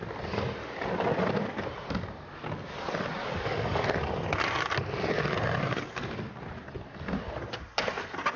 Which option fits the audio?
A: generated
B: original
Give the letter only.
B